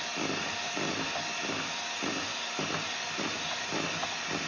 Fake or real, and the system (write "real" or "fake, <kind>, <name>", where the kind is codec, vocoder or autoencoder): real